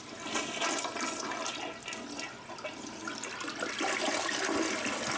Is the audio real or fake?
real